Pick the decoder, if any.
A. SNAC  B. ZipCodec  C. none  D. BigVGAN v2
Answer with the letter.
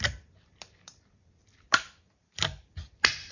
D